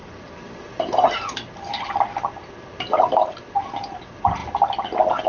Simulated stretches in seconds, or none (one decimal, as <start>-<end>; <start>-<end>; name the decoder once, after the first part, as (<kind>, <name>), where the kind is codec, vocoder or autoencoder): 3.2-5.3 (vocoder, BigVGAN v2)